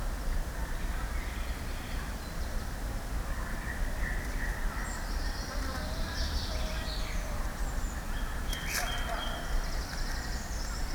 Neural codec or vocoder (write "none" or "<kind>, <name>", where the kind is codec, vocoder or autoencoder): vocoder, BigVGAN v2